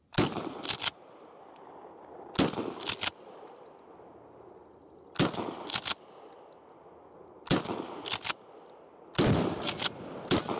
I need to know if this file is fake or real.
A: real